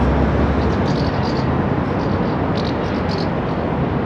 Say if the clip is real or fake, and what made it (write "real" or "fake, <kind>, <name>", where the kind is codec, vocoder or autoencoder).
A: real